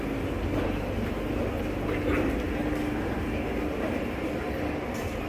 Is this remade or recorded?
recorded